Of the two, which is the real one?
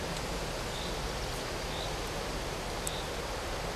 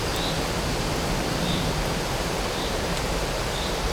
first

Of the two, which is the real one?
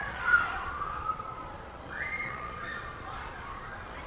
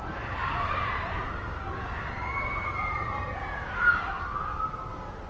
second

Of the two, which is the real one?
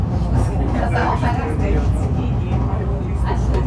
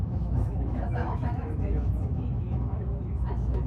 first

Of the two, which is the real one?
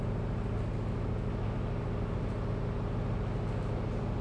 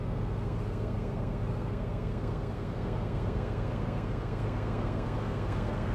first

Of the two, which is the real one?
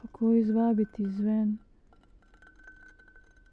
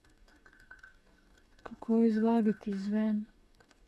first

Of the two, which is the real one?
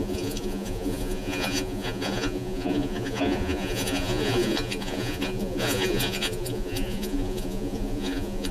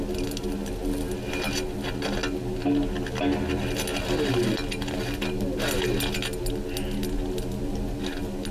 second